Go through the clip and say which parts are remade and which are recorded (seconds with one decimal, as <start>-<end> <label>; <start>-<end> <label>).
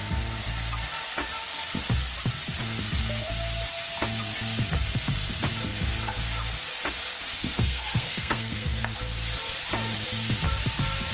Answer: 0.0-7.4 recorded; 7.4-8.8 remade; 8.8-11.1 recorded